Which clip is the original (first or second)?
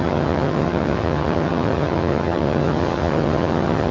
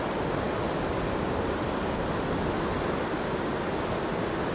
second